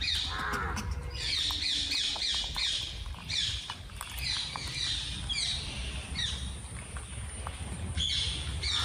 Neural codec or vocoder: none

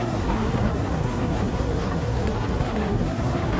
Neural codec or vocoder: codec, SNAC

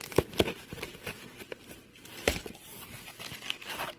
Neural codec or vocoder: none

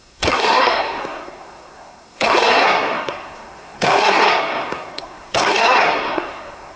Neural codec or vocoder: codec, SNAC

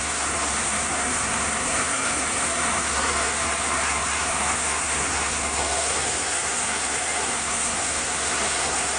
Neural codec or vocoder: codec, SNAC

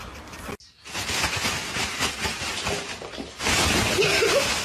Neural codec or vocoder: none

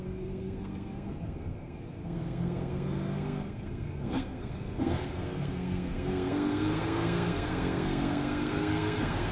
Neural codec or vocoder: codec, SNAC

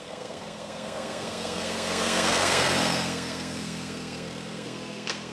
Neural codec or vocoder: codec, SNAC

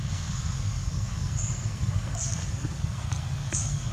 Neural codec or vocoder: codec, SNAC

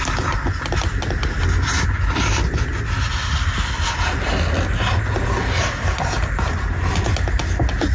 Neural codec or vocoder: none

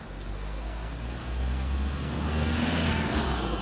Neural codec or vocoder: codec, SNAC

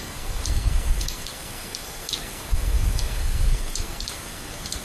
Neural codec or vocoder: codec, SNAC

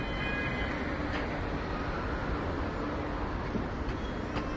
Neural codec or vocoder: none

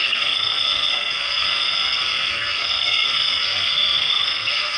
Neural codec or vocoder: codec, SNAC